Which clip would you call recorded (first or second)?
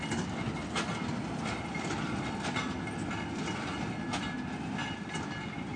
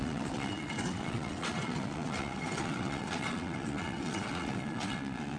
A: first